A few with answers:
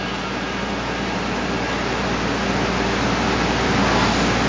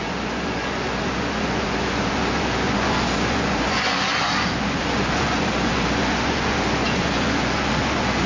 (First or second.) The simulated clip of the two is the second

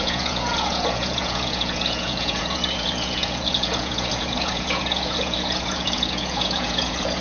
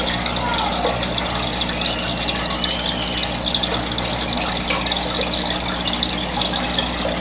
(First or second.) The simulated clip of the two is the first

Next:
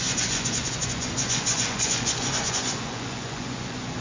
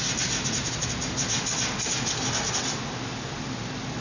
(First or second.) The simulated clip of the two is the first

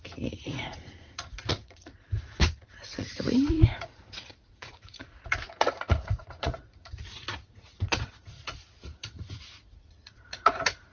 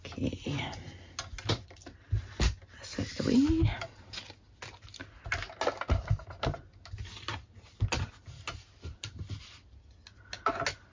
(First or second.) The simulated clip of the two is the first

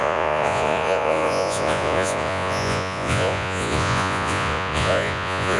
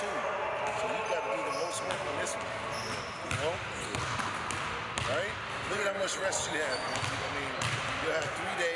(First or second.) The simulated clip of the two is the first